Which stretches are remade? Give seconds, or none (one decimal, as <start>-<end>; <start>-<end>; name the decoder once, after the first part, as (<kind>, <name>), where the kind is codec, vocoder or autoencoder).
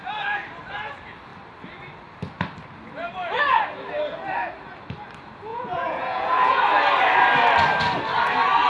5.5-6.6 (vocoder, Vocos)